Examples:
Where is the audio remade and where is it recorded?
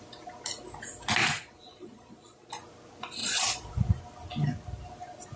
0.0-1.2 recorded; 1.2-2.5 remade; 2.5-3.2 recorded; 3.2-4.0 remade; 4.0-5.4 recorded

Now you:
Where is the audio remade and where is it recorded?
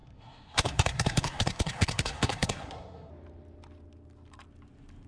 0.0-3.1 remade; 3.1-5.1 recorded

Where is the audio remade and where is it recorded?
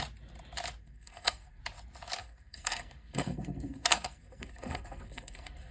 0.0-0.8 recorded; 0.8-1.6 remade; 1.6-2.2 recorded; 2.2-5.7 remade